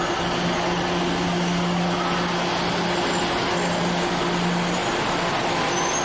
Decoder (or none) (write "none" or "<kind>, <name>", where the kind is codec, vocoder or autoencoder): none